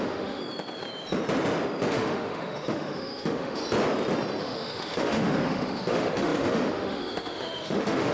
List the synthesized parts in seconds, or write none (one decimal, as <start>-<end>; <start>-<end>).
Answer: 0.0-0.4; 1.9-3.6; 4.4-8.1